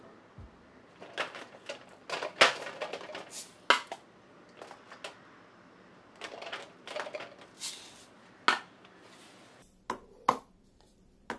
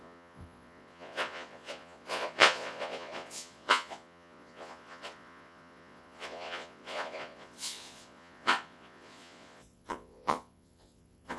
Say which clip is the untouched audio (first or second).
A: first